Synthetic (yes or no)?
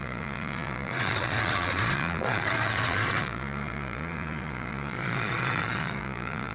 yes